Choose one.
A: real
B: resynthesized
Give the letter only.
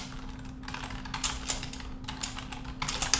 A